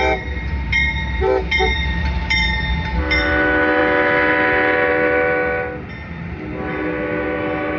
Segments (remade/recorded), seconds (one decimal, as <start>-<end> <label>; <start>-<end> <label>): 0.0-7.8 recorded